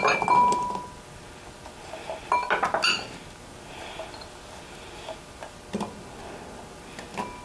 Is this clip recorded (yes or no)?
yes